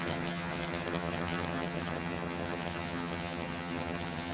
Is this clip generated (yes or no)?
yes